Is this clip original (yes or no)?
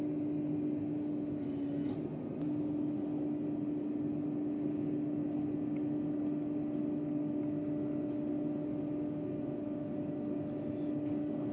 yes